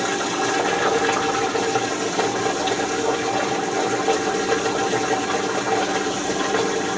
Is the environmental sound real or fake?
real